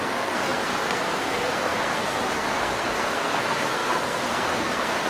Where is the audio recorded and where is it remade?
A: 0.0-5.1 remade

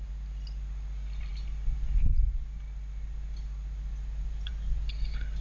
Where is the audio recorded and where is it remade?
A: 0.0-5.4 recorded

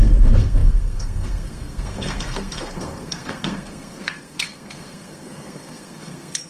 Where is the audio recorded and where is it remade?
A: 0.0-6.5 remade

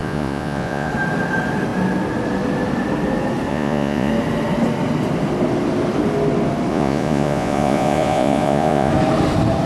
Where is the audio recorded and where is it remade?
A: 0.0-0.9 remade; 0.9-3.5 recorded; 3.5-4.1 remade; 4.1-6.7 recorded; 6.7-8.9 remade; 8.9-9.7 recorded

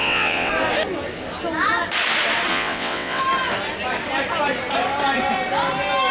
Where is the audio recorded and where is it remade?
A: 0.0-0.5 remade; 0.5-2.5 recorded; 2.5-3.2 remade; 3.2-6.1 recorded